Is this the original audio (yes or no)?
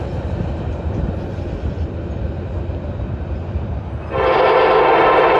yes